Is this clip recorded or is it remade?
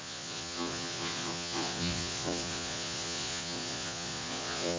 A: remade